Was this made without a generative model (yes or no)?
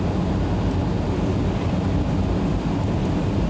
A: yes